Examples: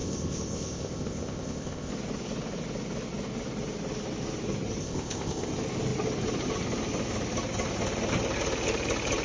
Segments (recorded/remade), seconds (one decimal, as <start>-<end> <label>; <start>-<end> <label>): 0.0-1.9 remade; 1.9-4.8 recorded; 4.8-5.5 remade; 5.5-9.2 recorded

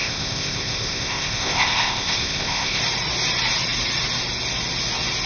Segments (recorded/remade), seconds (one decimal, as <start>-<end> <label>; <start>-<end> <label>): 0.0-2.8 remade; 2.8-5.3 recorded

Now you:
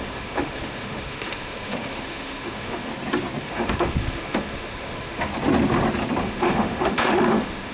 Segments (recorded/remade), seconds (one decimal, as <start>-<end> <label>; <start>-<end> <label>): 0.0-2.9 remade; 2.9-3.4 recorded; 3.4-5.3 remade; 5.3-6.2 recorded; 6.2-7.7 remade

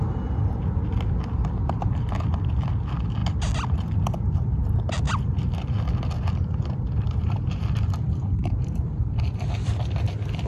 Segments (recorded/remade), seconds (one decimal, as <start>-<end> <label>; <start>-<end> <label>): 0.0-10.5 recorded

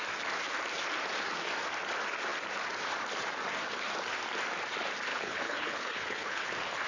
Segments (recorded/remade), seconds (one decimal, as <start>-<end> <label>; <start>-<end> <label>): 0.0-5.1 recorded; 5.1-6.5 remade; 6.5-6.9 recorded

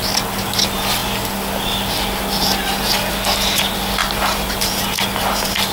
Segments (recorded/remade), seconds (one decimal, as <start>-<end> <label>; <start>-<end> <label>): 0.0-4.0 recorded; 4.0-4.7 remade; 4.7-5.7 recorded